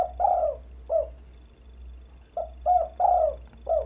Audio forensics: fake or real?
real